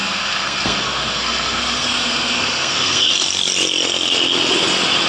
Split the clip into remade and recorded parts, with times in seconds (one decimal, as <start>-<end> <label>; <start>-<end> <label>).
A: 0.0-3.1 remade; 3.1-5.1 recorded